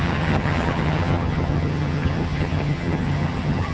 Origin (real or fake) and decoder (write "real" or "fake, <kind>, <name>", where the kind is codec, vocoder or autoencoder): fake, vocoder, HiFi-GAN